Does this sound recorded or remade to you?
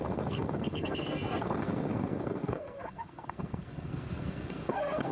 remade